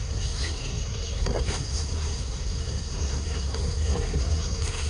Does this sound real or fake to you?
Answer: fake